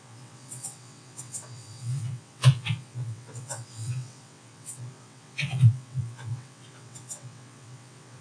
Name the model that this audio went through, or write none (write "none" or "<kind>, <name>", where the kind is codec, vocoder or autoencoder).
vocoder, WaveNeXt